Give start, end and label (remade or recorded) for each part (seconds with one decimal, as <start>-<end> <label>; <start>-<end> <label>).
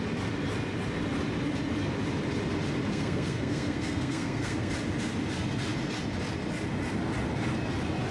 0.0-2.9 recorded; 2.9-4.7 remade; 4.7-8.1 recorded